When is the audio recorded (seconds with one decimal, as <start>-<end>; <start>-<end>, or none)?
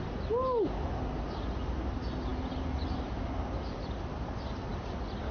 0.0-5.3